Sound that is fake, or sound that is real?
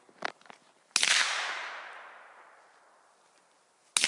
real